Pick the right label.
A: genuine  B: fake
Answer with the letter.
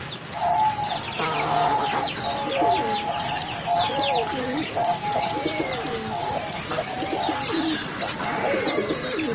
A